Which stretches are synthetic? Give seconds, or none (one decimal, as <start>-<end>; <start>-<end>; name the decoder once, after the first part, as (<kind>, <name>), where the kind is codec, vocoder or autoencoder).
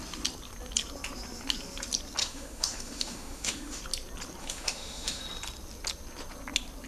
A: 2.2-3.8 (autoencoder, DAC-VAE); 4.4-5.2